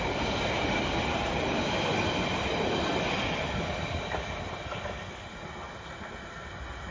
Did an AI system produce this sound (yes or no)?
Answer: no